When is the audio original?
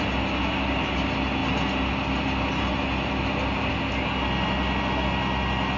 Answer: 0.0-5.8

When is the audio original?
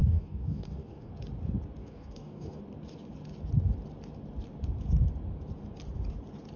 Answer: 1.1-1.8; 2.6-6.6